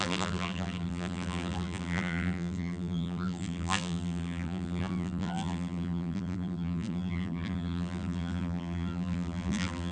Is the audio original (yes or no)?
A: no